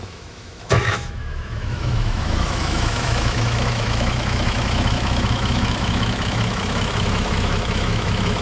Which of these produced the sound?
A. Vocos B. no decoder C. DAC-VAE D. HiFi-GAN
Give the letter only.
C